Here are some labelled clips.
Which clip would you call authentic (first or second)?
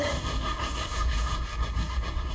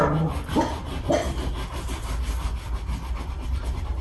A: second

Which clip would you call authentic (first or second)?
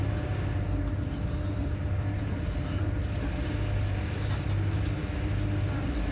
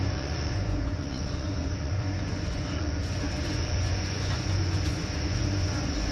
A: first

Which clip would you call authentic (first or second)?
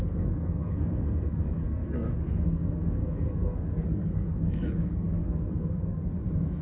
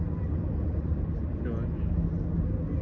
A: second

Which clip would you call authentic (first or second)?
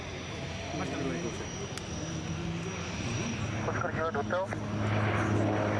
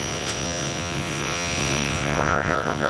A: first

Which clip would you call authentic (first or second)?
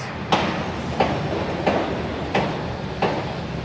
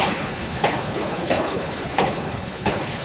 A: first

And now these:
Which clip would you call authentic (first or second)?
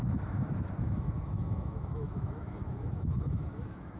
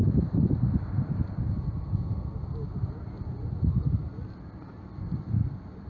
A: second